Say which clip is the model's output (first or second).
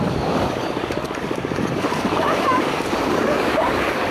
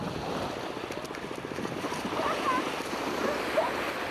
first